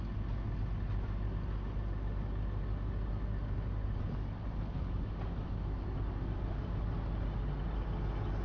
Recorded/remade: recorded